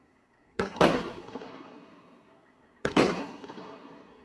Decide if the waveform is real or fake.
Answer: fake